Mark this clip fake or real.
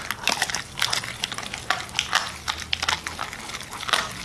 real